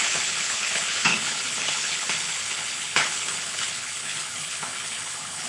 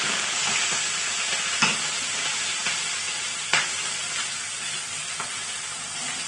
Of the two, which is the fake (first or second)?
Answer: first